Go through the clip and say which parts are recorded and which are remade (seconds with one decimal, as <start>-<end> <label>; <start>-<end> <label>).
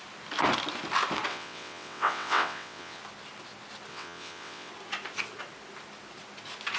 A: 0.0-1.3 recorded; 1.3-3.0 remade; 3.0-3.9 recorded; 3.9-4.7 remade; 4.7-6.8 recorded